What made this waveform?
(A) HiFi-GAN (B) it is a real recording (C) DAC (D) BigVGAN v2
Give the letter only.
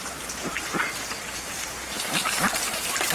D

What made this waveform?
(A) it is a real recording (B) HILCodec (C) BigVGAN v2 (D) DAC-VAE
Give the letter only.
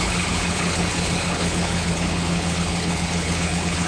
B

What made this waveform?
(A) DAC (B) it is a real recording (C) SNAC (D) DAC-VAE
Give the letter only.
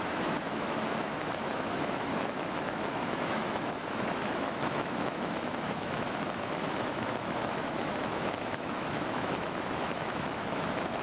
D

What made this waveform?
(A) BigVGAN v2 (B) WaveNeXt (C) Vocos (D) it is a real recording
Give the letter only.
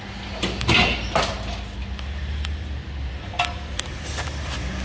D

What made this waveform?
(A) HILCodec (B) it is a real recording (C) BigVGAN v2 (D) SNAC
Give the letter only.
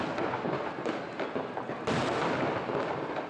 B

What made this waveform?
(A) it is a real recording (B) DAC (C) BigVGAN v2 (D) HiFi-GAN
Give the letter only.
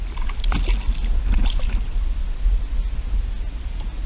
A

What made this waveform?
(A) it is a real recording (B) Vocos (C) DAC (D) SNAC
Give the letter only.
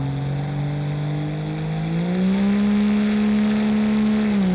A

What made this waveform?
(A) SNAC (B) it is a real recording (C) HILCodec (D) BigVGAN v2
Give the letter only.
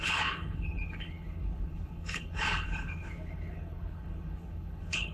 C